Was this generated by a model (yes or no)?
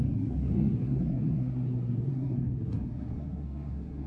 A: yes